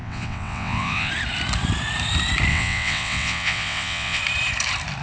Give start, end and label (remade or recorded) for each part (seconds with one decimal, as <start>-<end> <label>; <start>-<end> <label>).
0.0-1.1 remade; 1.1-2.5 recorded; 2.5-4.2 remade; 4.2-5.0 recorded